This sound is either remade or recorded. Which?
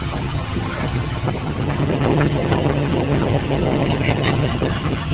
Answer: remade